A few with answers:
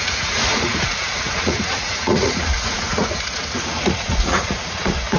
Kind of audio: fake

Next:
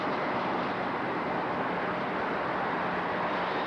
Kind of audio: real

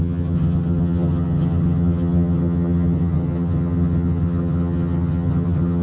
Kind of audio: fake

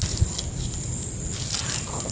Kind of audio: real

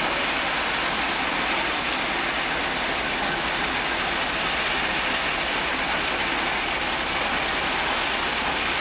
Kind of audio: real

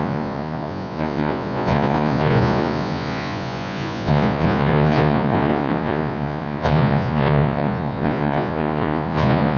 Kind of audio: fake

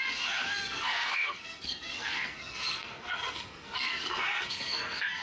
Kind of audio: fake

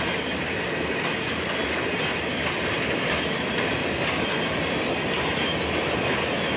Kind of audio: real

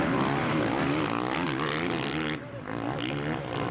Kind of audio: real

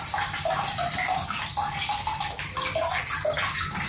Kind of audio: real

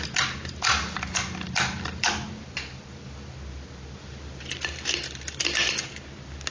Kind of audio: real